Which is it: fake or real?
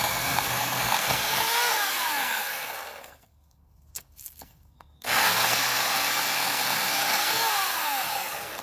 fake